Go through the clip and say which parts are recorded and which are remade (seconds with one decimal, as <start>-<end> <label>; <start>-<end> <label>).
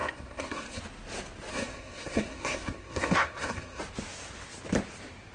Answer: 0.0-0.8 remade; 0.8-1.5 recorded; 1.5-3.8 remade; 3.8-5.3 recorded